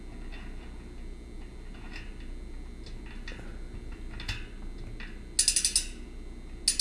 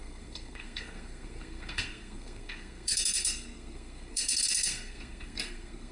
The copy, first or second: second